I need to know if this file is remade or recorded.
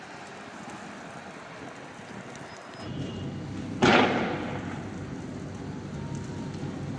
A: recorded